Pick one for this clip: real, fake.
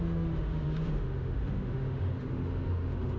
fake